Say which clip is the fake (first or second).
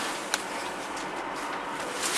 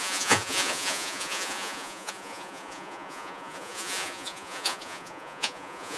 second